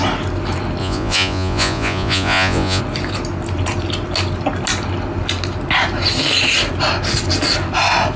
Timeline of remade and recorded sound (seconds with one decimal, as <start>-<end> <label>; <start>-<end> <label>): 0.0-0.8 recorded; 0.8-2.8 remade; 2.8-8.2 recorded